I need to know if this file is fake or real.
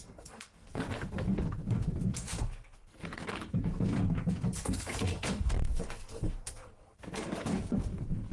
fake